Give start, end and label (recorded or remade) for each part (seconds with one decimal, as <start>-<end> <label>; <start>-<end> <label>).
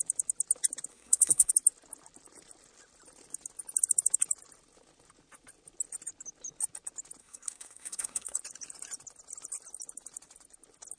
0.0-0.9 recorded; 0.9-1.5 remade; 1.5-7.2 recorded; 7.2-8.4 remade; 8.4-11.0 recorded